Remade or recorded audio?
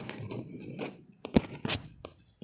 remade